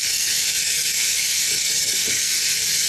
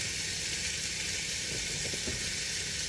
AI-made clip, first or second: first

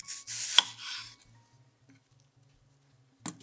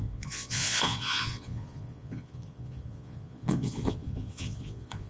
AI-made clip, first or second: second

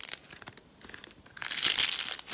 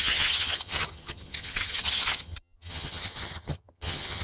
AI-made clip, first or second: second